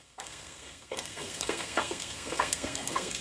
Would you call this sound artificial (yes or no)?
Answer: yes